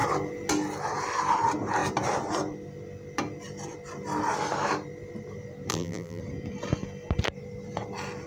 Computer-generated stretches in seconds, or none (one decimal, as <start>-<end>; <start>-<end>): 5.7-6.2